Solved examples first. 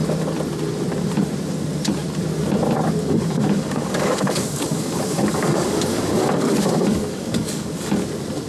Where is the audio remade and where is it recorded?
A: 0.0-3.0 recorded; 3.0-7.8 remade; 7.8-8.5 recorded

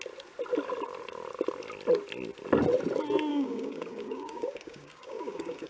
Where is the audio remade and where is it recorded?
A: 0.0-3.3 recorded; 3.3-5.7 remade

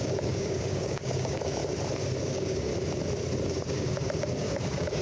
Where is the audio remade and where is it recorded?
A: 0.0-1.6 remade; 1.6-2.2 recorded; 2.2-2.7 remade; 2.7-3.4 recorded; 3.4-5.0 remade

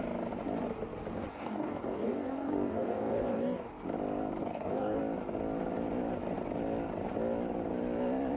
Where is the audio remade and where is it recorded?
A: 0.0-1.3 recorded; 1.3-3.7 remade; 3.7-4.4 recorded; 4.4-5.0 remade; 5.0-8.4 recorded

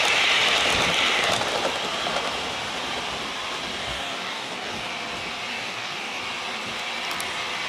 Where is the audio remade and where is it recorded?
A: 0.0-3.8 recorded; 3.8-4.9 remade; 4.9-5.5 recorded; 5.5-6.2 remade; 6.2-7.7 recorded

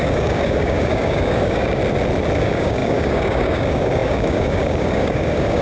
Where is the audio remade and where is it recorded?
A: 0.0-1.8 remade; 1.8-2.4 recorded; 2.4-5.6 remade